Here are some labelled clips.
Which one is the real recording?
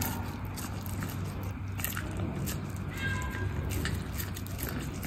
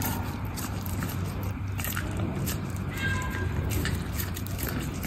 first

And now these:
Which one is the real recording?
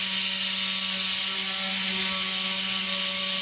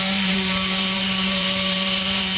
first